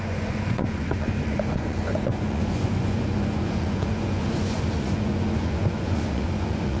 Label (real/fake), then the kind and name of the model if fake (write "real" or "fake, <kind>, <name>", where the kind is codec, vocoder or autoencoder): fake, vocoder, Vocos